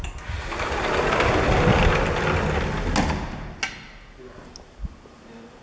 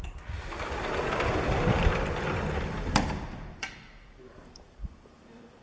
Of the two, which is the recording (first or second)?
first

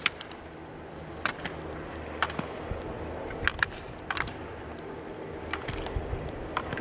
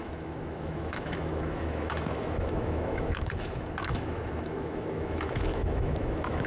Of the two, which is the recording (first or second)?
first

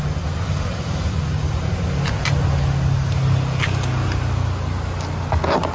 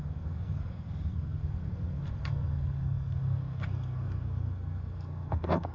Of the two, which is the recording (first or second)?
first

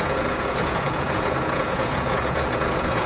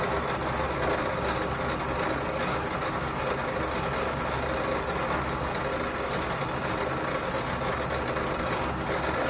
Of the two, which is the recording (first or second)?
second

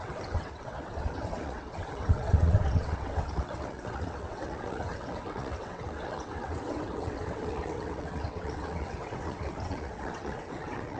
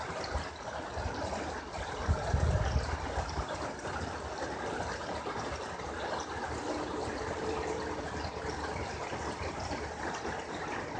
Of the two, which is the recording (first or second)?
second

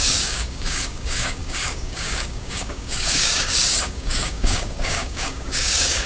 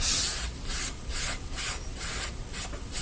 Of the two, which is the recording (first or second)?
second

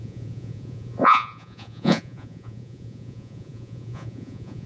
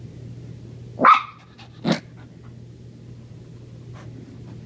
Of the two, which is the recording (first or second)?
second